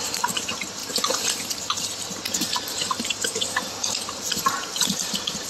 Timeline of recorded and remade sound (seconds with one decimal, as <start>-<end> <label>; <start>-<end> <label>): 0.0-0.8 remade; 0.8-2.5 recorded; 2.5-5.5 remade